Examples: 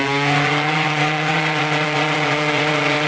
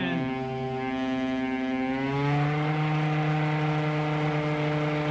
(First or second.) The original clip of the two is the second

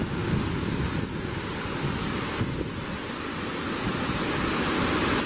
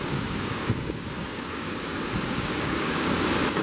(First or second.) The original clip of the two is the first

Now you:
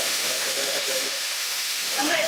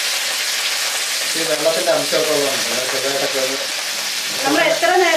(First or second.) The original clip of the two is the second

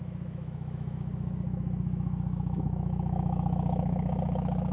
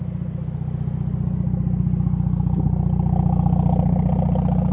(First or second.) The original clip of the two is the second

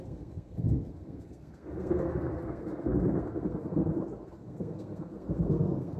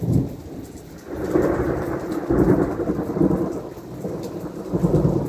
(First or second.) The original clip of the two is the second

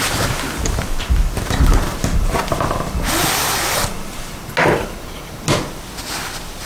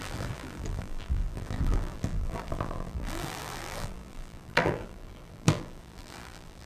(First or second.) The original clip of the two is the first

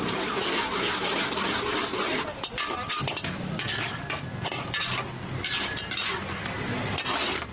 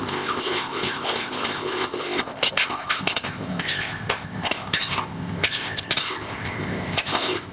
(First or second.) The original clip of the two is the first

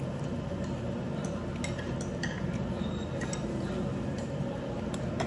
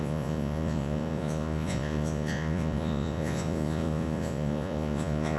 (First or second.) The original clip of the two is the first